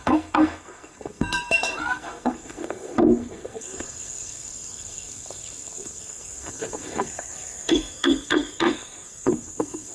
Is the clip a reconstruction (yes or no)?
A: yes